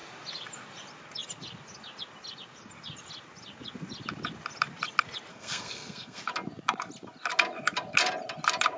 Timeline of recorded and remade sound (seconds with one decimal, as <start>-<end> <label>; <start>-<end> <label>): 0.0-5.3 recorded; 5.3-6.2 remade; 6.2-8.8 recorded